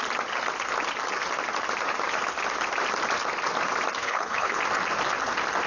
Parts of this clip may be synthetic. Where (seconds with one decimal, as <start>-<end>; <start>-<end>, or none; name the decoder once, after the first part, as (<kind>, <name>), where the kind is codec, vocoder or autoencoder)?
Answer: 4.0-4.6 (codec, HILCodec)